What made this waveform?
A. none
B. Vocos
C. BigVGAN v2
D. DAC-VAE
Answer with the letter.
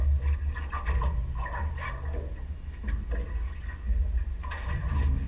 A